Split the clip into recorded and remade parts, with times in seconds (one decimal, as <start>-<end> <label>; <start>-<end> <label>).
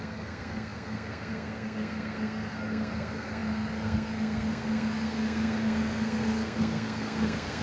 0.0-7.6 remade